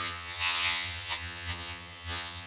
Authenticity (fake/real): fake